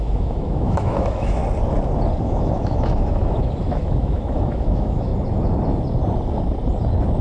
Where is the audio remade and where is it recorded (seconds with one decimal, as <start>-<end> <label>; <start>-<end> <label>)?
0.0-1.4 remade; 1.4-2.2 recorded; 2.2-5.1 remade; 5.1-7.2 recorded